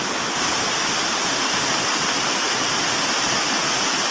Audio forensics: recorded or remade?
recorded